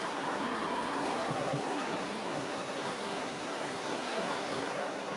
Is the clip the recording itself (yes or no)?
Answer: no